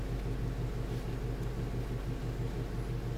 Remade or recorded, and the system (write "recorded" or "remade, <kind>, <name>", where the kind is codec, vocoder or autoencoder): recorded